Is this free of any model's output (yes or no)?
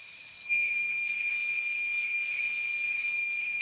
no